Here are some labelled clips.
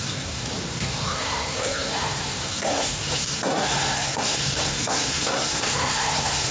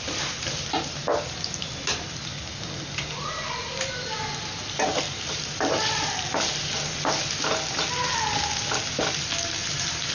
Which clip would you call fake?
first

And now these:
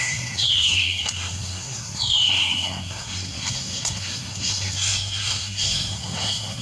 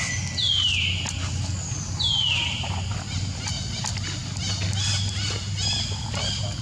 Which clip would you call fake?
first